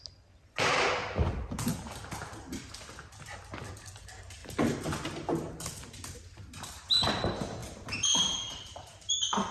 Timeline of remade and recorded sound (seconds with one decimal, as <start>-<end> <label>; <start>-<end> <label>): 0.0-1.7 recorded; 1.7-2.5 remade; 2.5-7.6 recorded; 7.6-9.5 remade